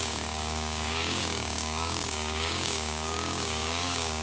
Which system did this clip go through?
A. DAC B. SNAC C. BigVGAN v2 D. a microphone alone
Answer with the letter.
A